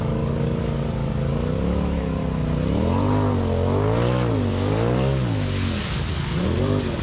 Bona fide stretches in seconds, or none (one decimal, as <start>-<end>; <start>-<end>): 2.2-4.5